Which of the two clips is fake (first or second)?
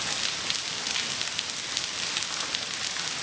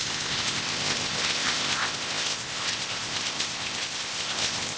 second